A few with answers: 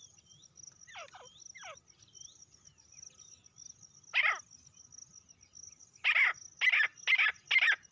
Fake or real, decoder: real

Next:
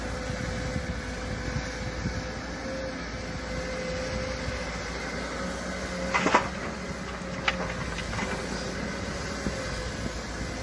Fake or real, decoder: real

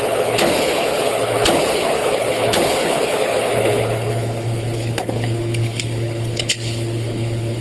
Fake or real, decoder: fake, codec, HILCodec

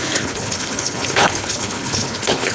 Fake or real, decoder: fake, codec, HILCodec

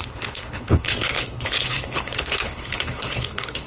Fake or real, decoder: fake, codec, HILCodec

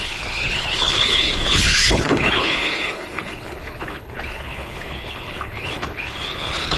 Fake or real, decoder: fake, codec, HILCodec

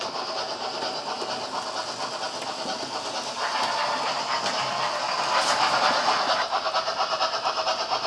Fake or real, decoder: real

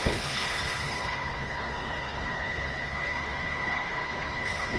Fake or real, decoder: fake, codec, HILCodec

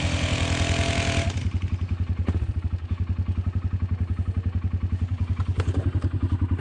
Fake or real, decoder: real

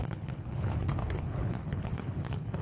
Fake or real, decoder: fake, codec, HILCodec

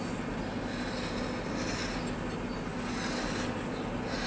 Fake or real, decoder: real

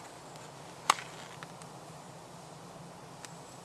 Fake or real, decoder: real